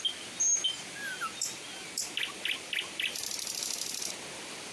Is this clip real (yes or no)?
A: yes